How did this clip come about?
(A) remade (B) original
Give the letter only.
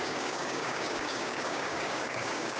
A